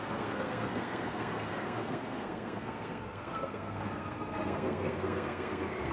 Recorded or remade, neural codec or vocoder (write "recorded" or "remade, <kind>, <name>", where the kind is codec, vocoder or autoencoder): remade, codec, SNAC